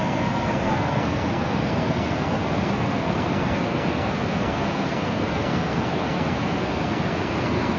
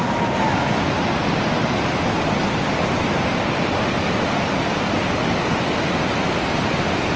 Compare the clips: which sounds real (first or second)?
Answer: second